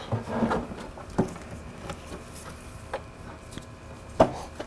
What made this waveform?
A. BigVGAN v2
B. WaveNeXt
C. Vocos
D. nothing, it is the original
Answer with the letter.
D